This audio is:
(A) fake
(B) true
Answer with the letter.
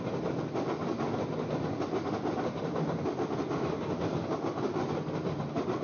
B